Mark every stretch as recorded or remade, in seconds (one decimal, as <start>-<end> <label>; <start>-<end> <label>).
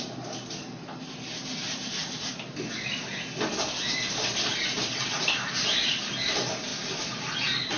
0.0-1.6 recorded; 1.6-2.3 remade; 2.3-4.5 recorded; 4.5-5.2 remade; 5.2-7.8 recorded